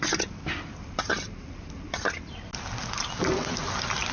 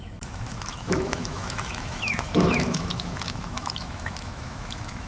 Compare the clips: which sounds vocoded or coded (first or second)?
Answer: second